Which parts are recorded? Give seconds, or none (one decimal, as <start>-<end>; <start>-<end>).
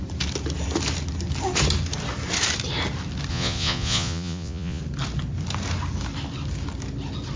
0.0-3.3; 4.8-7.4